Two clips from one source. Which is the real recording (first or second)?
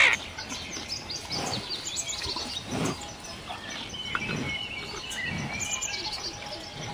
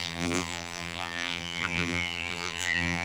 first